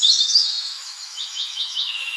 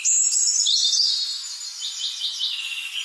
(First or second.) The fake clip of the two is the first